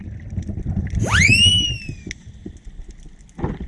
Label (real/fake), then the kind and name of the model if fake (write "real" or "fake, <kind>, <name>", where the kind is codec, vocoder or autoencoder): real